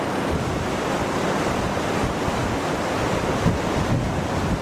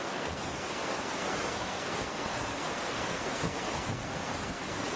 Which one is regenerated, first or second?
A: second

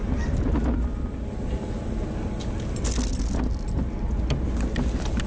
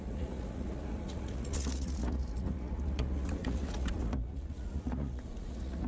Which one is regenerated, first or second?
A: second